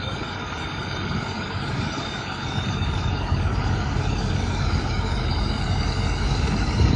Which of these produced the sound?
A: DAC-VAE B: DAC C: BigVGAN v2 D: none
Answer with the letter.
B